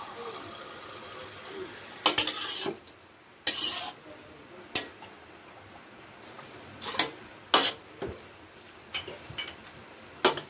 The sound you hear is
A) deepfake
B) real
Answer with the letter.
B